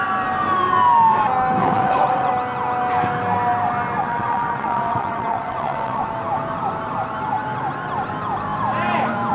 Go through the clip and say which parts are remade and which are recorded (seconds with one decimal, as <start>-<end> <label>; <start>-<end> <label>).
0.0-1.6 recorded; 1.6-2.3 remade; 2.3-4.0 recorded; 4.0-6.0 remade; 6.0-9.3 recorded